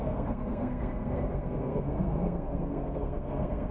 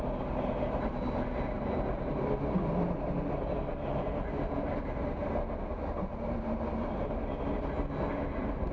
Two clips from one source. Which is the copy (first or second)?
first